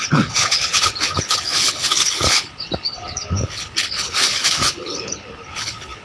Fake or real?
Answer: fake